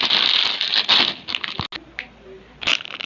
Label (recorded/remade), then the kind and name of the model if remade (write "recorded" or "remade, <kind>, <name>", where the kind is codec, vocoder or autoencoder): recorded